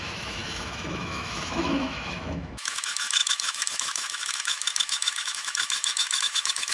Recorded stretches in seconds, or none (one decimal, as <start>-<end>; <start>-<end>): none